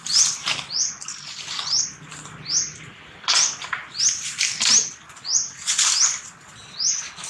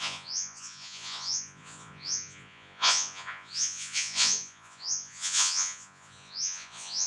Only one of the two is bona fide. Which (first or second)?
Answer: first